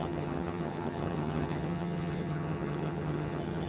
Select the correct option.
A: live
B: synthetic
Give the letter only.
B